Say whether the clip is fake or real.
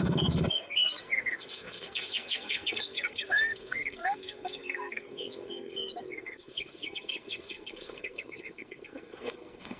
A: fake